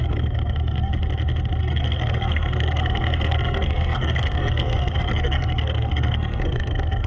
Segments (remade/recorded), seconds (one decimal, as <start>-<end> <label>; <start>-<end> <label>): 0.0-0.9 remade; 0.9-1.6 recorded; 1.6-7.1 remade